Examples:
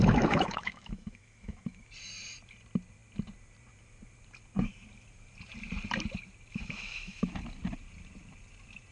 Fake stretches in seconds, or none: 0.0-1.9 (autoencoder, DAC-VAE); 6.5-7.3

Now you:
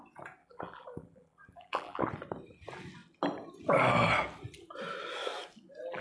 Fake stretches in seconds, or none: 0.4-2.0 (vocoder, BigVGAN v2)

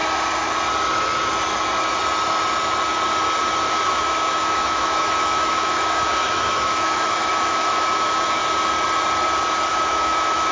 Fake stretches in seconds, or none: 3.7-8.4 (autoencoder, DAC-VAE); 9.7-10.5

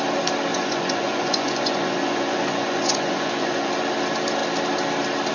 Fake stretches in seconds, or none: 0.5-3.7 (vocoder, Vocos)